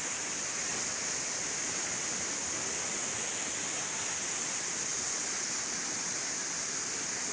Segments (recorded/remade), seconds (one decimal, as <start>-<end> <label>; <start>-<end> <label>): 0.0-7.3 recorded